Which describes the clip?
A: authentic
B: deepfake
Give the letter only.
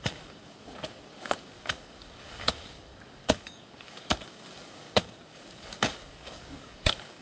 B